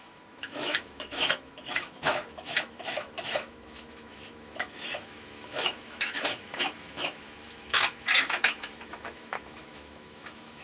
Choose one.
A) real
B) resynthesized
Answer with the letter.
B